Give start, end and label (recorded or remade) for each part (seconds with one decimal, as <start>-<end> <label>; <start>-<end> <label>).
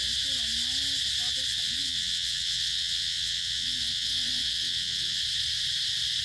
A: 0.0-1.5 recorded; 1.5-5.2 remade; 5.2-6.2 recorded